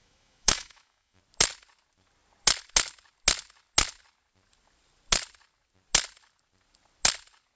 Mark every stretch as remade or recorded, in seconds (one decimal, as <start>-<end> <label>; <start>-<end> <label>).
0.0-1.2 remade; 1.2-7.6 recorded